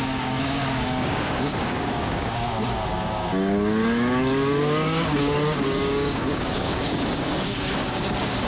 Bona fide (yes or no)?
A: no